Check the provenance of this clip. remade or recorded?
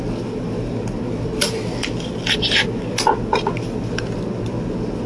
recorded